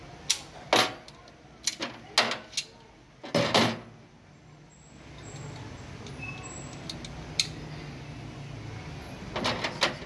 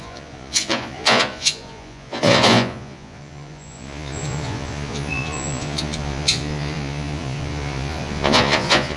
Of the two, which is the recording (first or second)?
first